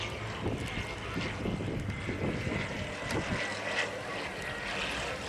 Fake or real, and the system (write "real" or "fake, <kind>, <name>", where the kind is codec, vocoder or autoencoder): real